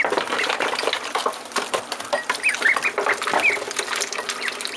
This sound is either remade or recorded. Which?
recorded